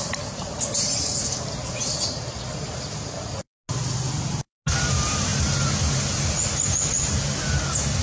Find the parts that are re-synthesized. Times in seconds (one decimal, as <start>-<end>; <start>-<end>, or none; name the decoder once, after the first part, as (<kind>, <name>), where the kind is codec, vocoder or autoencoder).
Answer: none